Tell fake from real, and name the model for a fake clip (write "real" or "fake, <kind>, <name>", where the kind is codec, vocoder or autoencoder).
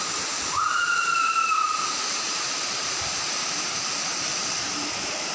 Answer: fake, vocoder, BigVGAN v2